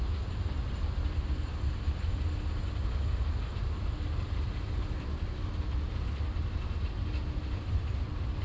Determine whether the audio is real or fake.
real